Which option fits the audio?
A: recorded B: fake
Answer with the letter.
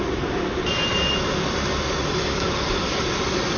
A